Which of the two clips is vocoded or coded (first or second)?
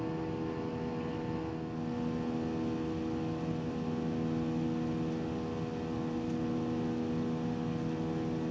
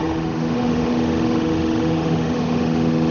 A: second